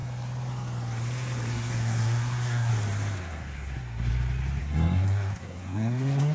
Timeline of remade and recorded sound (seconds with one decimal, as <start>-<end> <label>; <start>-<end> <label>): 0.0-1.5 recorded; 1.5-2.7 remade; 2.7-3.2 recorded; 3.2-4.1 remade; 4.1-4.6 recorded; 4.6-6.3 remade

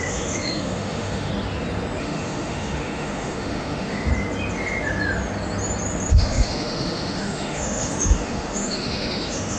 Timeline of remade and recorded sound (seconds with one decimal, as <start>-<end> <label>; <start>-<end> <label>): 0.0-1.3 remade; 1.3-2.0 recorded; 2.0-4.1 remade; 4.1-6.1 recorded; 6.1-9.6 remade

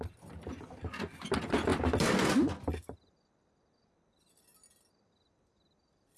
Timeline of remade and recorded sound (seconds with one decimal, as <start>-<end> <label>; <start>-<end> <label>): 0.0-6.2 recorded

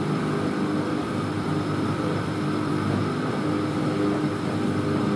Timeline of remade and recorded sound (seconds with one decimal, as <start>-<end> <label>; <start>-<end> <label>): 0.0-1.5 recorded; 1.5-2.7 remade; 2.7-5.2 recorded

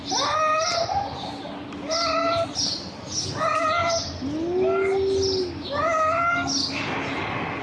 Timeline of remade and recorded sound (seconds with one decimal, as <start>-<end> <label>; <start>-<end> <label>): 0.0-7.6 recorded

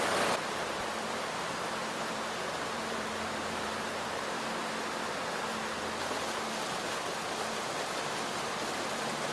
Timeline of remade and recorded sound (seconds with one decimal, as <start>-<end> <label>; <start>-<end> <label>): 0.0-0.4 recorded; 0.4-4.7 remade; 4.7-9.3 recorded

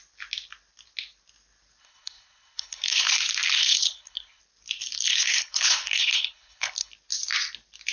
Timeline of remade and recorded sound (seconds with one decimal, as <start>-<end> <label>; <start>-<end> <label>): 0.0-1.8 recorded; 1.8-3.1 remade; 3.1-3.6 recorded; 3.6-4.4 remade; 4.4-5.1 recorded; 5.1-6.9 remade; 6.9-7.9 recorded

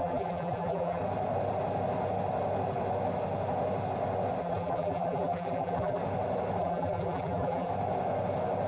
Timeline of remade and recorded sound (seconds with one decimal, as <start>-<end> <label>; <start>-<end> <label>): 0.0-1.0 remade; 1.0-4.4 recorded; 4.4-6.0 remade; 6.0-6.6 recorded; 6.6-7.7 remade; 7.7-8.7 recorded